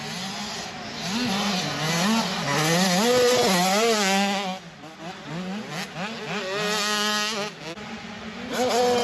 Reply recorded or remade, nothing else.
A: recorded